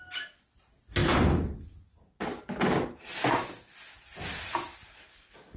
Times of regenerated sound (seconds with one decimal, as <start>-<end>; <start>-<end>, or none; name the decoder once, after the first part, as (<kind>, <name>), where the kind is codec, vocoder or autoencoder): 1.0-3.1 (vocoder, BigVGAN v2); 4.1-5.0

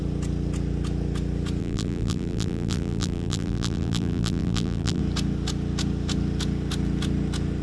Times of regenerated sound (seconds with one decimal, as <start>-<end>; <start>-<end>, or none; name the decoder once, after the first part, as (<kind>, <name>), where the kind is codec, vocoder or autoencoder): 1.6-5.0 (vocoder, BigVGAN v2)